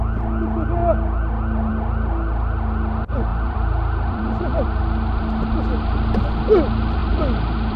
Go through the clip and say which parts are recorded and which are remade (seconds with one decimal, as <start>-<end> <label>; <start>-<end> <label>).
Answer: 0.0-3.3 recorded; 3.3-4.8 remade; 4.8-7.0 recorded; 7.0-7.8 remade